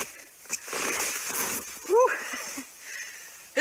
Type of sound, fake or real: fake